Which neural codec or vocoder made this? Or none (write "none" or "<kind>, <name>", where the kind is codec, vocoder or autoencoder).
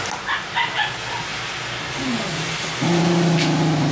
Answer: none